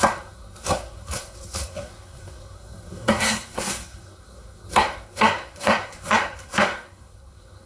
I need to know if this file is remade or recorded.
remade